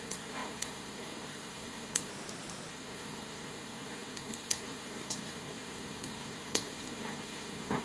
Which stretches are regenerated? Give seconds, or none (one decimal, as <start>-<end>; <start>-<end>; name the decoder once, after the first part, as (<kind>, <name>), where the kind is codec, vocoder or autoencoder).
0.0-2.1 (codec, SNAC); 2.7-7.8